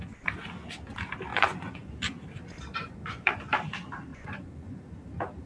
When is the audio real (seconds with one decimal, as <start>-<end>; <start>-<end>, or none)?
0.0-1.3; 1.9-2.8; 3.4-4.1; 4.8-5.5